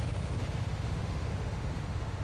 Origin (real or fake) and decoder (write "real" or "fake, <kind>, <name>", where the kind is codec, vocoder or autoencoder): fake, autoencoder, DAC-VAE